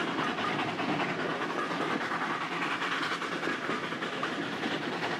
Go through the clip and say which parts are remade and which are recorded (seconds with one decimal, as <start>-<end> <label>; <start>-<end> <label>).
0.0-5.2 recorded